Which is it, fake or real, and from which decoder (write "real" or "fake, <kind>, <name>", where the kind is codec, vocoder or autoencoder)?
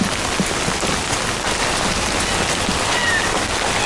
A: real